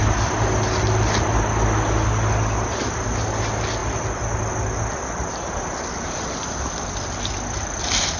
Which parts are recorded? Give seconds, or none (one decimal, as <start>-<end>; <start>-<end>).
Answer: 0.0-8.2